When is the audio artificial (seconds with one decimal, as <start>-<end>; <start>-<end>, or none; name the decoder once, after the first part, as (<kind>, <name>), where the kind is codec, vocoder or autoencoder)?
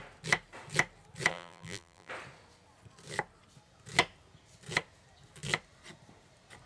1.3-2.1 (vocoder, BigVGAN v2)